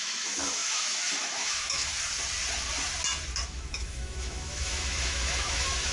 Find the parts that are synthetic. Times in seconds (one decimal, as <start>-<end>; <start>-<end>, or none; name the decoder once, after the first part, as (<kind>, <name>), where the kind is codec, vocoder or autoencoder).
0.0-1.9 (autoencoder, DAC-VAE); 3.5-5.9

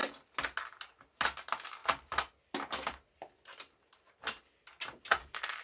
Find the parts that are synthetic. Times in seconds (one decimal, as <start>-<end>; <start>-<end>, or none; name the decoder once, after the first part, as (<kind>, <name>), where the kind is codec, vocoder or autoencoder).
none

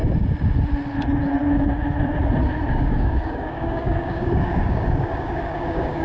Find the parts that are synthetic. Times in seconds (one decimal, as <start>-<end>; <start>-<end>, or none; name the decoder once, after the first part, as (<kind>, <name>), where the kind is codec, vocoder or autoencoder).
2.7-6.0 (codec, DAC)

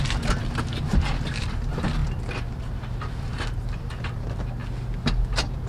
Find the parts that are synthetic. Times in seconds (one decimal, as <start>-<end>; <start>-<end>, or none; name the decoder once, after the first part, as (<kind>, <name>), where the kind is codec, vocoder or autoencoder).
0.0-4.6 (vocoder, BigVGAN v2); 5.2-5.7

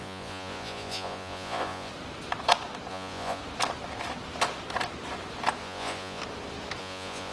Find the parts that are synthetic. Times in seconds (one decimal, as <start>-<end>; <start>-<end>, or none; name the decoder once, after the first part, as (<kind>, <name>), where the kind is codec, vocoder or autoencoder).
0.0-1.9 (vocoder, Vocos); 2.9-3.4; 5.6-6.2; 6.8-7.3